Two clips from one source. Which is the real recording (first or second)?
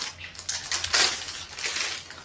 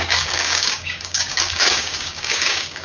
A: first